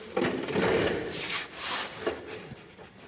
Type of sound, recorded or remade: recorded